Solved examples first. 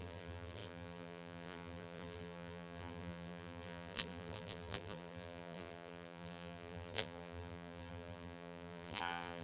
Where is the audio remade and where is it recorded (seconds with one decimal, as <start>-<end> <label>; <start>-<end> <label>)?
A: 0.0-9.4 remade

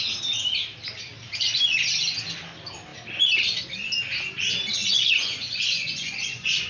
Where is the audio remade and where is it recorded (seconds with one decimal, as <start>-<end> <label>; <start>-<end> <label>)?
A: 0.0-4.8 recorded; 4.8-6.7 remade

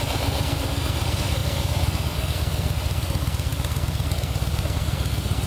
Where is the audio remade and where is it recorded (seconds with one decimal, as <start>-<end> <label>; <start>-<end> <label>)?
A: 0.0-5.5 remade

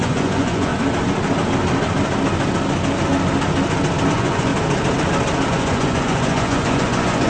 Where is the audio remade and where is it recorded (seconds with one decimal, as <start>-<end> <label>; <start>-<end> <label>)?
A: 0.0-0.7 remade; 0.7-4.1 recorded; 4.1-4.5 remade; 4.5-5.5 recorded; 5.5-7.3 remade

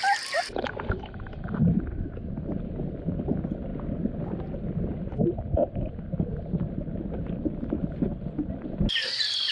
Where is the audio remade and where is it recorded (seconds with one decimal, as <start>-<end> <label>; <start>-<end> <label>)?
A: 0.0-9.5 recorded

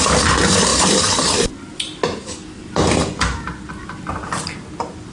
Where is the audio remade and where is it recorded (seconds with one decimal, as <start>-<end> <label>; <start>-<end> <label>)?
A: 0.0-0.7 recorded; 0.7-1.7 remade; 1.7-5.1 recorded

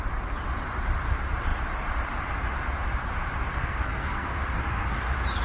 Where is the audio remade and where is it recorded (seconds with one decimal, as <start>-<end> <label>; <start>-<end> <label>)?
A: 0.0-3.5 recorded; 3.5-5.0 remade; 5.0-5.4 recorded